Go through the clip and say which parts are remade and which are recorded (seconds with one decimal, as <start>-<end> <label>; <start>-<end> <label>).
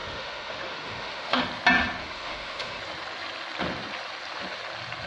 0.0-1.4 remade; 1.4-2.0 recorded; 2.0-2.8 remade; 2.8-5.1 recorded